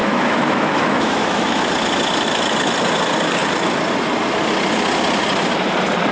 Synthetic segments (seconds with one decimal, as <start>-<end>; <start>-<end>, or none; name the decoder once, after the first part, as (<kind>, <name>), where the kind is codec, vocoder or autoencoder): 0.0-1.6 (autoencoder, DAC-VAE)